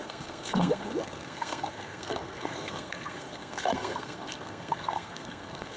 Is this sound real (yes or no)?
no